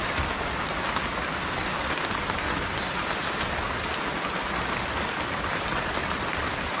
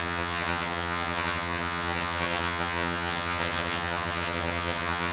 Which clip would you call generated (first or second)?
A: second